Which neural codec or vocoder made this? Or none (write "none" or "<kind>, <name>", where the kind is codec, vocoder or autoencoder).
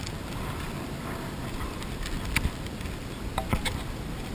none